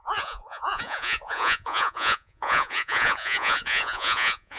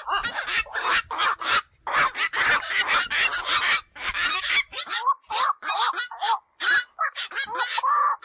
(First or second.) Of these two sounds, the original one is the second